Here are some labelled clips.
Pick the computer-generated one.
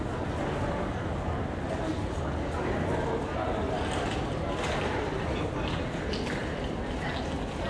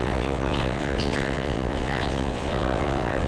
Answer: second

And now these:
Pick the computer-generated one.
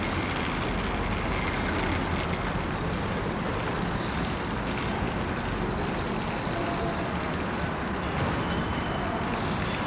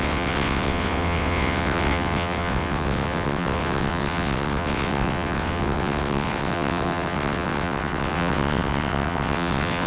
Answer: second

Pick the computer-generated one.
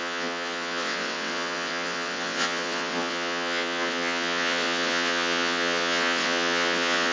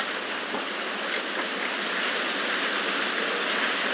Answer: first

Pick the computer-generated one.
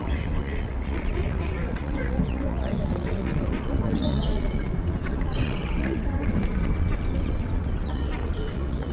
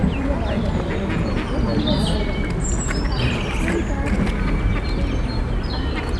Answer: first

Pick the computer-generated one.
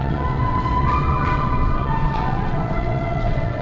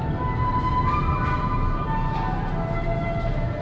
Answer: first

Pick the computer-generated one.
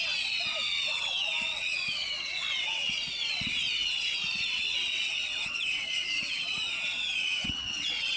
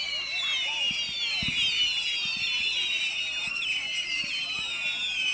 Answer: first